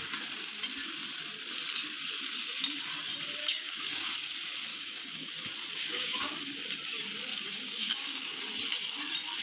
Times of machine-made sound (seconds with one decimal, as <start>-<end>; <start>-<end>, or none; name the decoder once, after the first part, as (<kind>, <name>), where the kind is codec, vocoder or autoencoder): 3.4-4.1 (codec, DAC); 4.7-5.3; 5.8-6.3; 7.3-8.4